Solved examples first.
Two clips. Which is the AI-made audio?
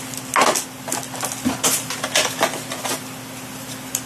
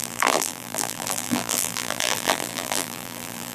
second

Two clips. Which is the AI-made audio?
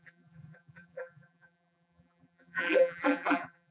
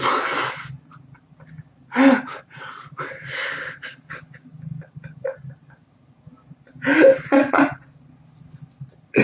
first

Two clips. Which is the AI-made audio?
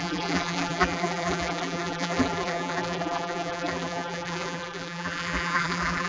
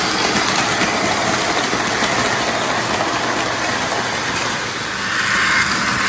first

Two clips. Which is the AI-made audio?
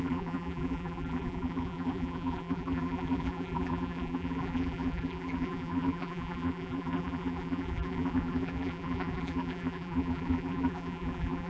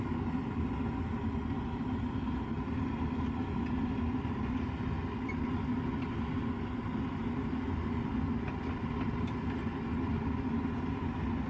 first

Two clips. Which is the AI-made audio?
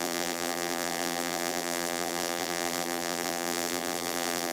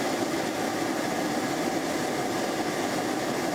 first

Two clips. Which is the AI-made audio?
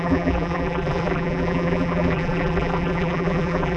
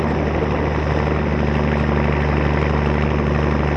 first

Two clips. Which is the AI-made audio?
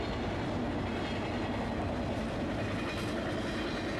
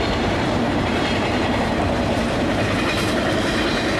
second